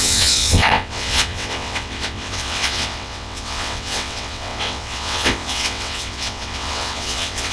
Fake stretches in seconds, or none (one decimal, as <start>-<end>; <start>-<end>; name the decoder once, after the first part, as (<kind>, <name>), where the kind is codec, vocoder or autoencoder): 0.0-7.5 (vocoder, WaveNeXt)